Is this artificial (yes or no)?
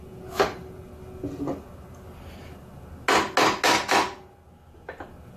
no